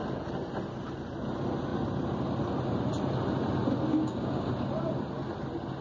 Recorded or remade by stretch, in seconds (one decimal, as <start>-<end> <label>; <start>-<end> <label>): 0.0-3.9 recorded; 3.9-4.5 remade; 4.5-5.8 recorded